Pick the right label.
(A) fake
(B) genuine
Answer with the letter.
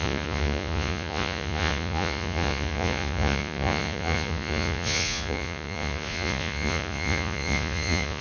A